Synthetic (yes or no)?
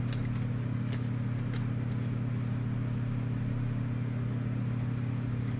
no